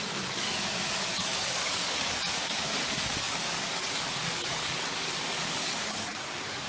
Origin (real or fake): fake